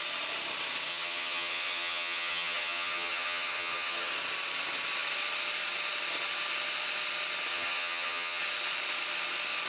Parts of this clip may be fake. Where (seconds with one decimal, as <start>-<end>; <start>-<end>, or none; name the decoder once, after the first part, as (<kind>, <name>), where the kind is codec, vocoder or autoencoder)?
0.9-4.1 (vocoder, HiFi-GAN); 7.5-8.4